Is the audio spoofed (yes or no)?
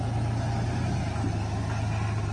no